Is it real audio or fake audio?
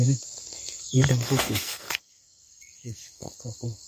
fake